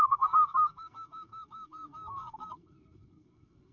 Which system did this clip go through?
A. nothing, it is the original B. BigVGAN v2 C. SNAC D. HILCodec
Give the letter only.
C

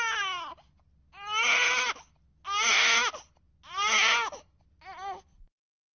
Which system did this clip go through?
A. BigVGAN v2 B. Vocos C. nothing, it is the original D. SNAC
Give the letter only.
C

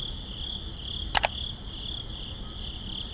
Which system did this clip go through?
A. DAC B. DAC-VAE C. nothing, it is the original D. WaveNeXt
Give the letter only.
C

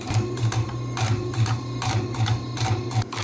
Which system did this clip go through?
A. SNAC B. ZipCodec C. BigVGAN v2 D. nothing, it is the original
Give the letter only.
D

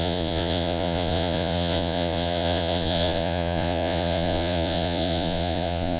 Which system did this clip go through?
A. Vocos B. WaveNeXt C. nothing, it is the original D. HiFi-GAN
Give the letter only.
A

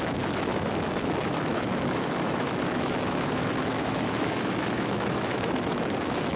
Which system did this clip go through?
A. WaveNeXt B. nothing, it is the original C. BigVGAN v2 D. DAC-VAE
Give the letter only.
D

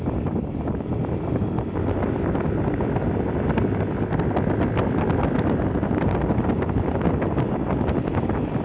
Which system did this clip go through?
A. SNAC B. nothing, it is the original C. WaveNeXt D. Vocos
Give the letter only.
B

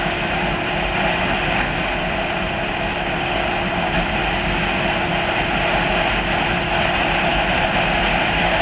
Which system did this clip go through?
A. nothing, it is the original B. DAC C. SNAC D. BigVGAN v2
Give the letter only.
A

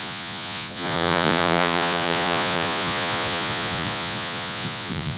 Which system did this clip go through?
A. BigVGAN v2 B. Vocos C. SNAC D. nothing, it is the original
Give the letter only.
B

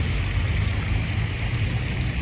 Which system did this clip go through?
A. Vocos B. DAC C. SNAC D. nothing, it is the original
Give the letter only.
D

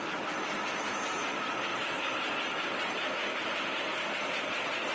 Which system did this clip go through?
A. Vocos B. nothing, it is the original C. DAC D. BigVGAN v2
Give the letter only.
B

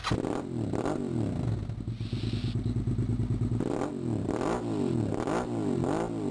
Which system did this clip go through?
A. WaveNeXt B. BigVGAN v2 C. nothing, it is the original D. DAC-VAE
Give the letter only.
C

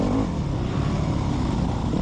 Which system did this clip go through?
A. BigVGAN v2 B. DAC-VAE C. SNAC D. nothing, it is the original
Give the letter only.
D